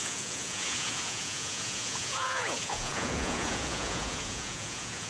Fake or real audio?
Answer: fake